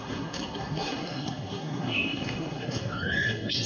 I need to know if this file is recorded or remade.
remade